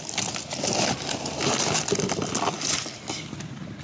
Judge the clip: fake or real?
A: fake